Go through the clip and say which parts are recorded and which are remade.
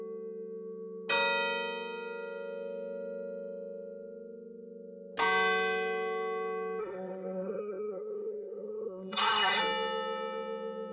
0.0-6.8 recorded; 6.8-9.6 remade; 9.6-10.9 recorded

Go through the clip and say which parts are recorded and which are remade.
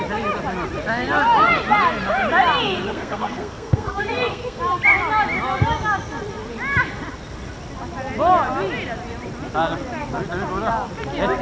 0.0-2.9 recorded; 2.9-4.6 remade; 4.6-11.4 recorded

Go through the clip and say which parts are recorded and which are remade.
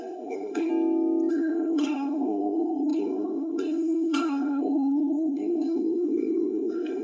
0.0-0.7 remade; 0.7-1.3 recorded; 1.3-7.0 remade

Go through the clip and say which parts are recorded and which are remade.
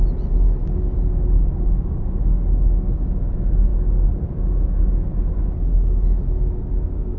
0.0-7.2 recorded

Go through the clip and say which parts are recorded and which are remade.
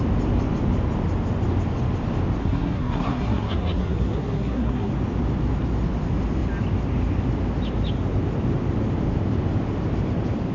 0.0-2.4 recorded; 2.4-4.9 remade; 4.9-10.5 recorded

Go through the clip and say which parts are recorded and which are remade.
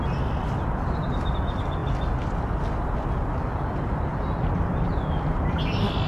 0.0-6.1 recorded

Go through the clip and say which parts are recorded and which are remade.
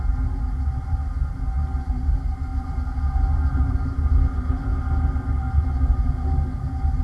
0.0-7.0 recorded